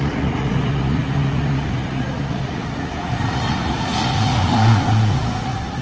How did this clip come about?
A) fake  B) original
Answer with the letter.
A